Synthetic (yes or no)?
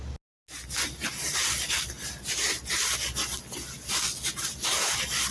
no